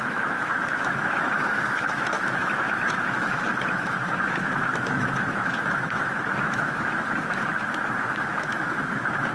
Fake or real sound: fake